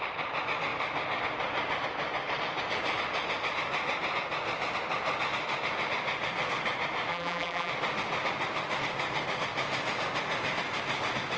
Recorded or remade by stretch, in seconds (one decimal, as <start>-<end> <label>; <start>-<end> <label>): 0.0-7.1 recorded; 7.1-7.7 remade; 7.7-11.4 recorded